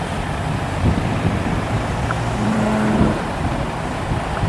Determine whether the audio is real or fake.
fake